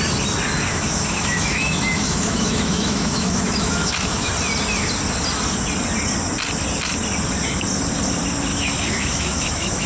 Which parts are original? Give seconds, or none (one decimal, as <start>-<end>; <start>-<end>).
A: 0.0-0.7; 4.3-8.5